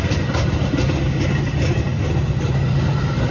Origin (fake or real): real